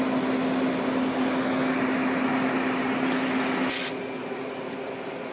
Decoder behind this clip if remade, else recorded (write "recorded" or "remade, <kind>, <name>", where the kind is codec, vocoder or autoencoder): recorded